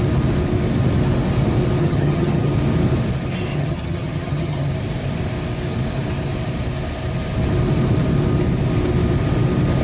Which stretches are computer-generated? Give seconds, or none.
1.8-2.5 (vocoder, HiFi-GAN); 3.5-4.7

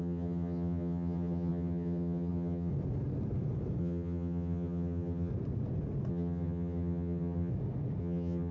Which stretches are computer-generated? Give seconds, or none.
0.0-2.7 (vocoder, HiFi-GAN); 3.8-5.3; 6.1-7.5; 8.0-8.5

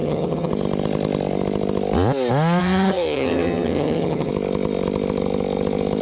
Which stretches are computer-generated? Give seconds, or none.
0.0-0.5 (vocoder, HiFi-GAN); 2.6-4.3

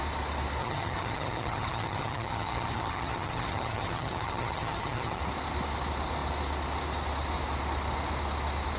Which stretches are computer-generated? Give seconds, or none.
0.6-5.2 (vocoder, HiFi-GAN)